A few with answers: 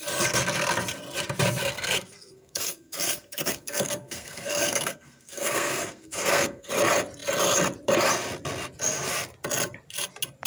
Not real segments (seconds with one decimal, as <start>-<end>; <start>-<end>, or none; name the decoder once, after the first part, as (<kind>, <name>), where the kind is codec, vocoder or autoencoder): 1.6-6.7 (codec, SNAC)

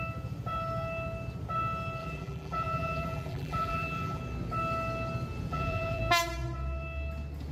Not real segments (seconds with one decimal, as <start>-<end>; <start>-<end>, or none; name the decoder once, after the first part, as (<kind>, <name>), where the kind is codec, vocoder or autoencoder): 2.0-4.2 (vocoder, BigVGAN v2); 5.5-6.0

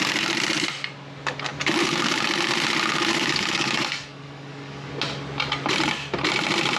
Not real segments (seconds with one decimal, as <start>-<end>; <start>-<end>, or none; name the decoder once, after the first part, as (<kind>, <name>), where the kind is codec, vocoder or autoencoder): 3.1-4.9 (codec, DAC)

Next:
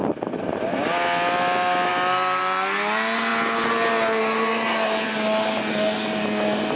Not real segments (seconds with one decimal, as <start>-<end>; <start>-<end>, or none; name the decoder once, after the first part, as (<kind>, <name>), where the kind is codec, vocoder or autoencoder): none

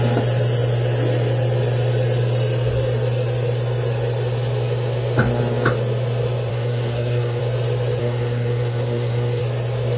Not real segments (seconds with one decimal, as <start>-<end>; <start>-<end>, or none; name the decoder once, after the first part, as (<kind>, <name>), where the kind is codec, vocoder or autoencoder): 6.5-7.4 (codec, SNAC); 8.0-9.4

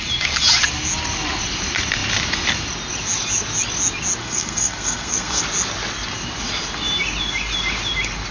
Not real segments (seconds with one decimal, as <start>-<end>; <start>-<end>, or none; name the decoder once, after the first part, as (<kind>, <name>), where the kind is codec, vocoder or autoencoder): 4.2-5.4 (codec, SNAC)

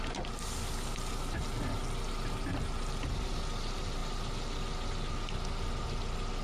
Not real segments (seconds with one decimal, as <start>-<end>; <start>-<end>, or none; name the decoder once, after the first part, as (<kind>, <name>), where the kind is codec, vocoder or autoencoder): none

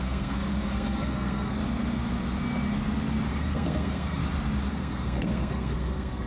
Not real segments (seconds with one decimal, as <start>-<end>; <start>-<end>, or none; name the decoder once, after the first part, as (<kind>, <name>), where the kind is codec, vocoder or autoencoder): 0.0-1.6 (codec, SNAC); 3.3-4.2; 4.7-6.3